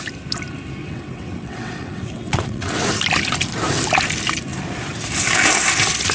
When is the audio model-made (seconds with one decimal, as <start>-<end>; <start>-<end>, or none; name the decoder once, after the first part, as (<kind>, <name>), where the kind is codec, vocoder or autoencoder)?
0.8-2.8 (vocoder, WaveNeXt)

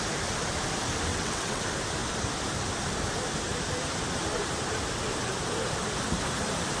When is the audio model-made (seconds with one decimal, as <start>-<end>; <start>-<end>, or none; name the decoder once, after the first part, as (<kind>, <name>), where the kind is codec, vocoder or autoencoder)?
1.1-1.6 (vocoder, WaveNeXt)

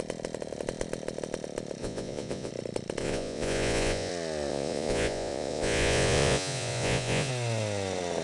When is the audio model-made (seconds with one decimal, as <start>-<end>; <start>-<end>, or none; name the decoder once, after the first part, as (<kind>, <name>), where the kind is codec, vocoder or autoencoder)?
1.8-2.5 (vocoder, Vocos); 3.0-4.1; 4.5-7.3

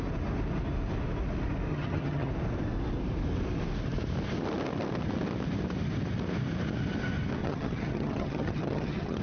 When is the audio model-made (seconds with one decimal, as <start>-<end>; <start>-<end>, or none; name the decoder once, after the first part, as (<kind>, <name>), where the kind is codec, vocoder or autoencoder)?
1.7-2.3 (vocoder, HiFi-GAN); 7.4-9.2

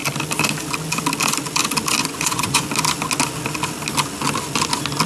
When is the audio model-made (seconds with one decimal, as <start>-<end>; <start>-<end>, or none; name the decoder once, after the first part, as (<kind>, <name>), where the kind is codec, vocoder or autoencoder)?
2.0-2.7 (vocoder, Vocos)